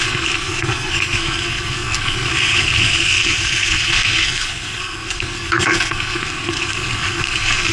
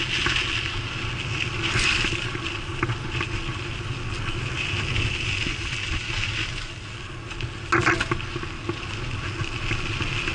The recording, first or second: second